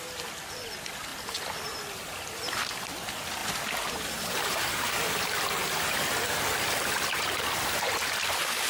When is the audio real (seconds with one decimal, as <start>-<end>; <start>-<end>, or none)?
1.1-2.2